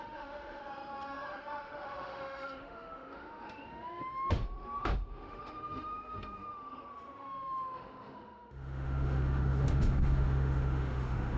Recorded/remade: remade